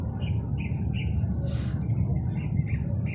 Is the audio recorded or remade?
recorded